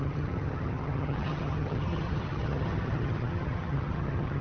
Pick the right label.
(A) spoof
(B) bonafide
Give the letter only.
A